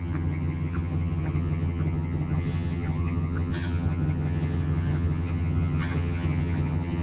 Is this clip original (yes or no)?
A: no